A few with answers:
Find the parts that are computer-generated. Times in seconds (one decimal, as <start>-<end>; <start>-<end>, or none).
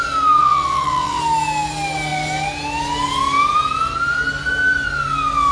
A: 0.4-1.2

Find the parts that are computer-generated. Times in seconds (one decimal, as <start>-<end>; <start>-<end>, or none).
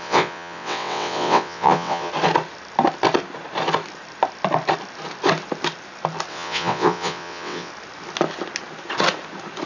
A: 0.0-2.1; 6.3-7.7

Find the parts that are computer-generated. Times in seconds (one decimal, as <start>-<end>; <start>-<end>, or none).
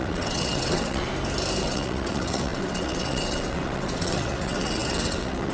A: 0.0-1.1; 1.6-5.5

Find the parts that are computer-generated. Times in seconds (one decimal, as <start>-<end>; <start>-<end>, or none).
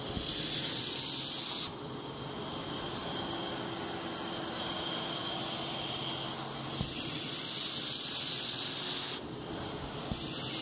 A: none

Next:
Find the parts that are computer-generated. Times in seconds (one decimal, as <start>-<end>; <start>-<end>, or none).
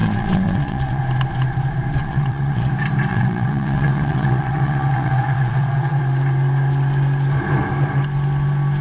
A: 0.0-1.0; 2.0-2.7; 3.1-6.0